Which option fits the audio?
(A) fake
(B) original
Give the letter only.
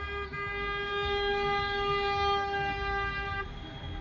B